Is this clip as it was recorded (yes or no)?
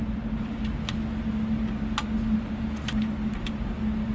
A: yes